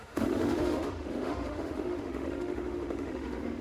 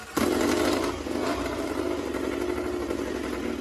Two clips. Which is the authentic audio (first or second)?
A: second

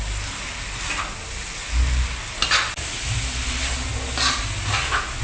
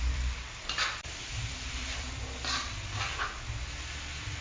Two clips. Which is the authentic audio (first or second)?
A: first